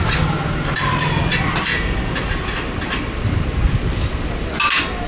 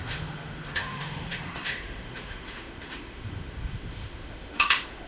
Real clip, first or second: first